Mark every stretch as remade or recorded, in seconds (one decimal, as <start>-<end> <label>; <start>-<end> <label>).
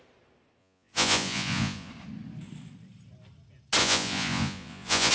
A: 0.0-0.6 recorded; 0.6-1.9 remade; 1.9-3.8 recorded; 3.8-5.1 remade